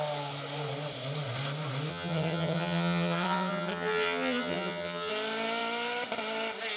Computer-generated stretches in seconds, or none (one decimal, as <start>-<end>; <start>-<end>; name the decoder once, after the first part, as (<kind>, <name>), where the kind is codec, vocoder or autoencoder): 1.9-5.1 (vocoder, HiFi-GAN)